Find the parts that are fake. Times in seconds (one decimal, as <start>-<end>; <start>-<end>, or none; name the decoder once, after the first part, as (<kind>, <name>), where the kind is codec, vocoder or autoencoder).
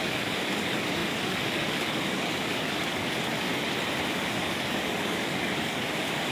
0.0-3.5 (codec, DAC); 4.1-6.3